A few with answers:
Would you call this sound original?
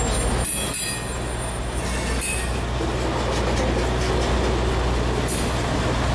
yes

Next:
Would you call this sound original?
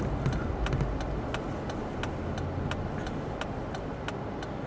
yes